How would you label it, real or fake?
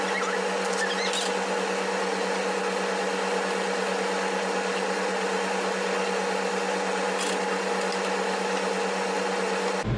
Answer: real